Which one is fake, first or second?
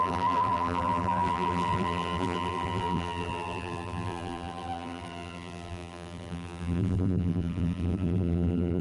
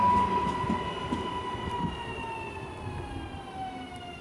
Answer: first